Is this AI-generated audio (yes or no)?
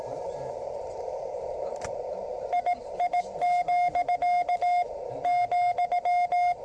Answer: no